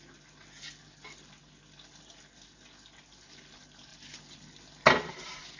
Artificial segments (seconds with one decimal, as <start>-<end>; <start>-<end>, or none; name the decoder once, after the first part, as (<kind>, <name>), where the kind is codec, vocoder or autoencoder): none